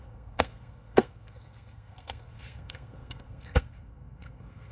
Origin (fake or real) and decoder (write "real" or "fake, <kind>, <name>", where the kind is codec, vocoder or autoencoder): fake, codec, SNAC